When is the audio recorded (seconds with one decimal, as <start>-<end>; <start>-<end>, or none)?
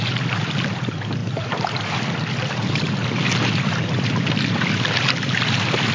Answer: 0.0-5.9